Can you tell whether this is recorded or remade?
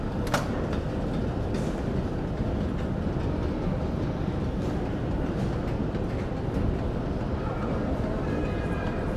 recorded